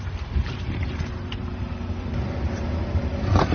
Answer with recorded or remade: remade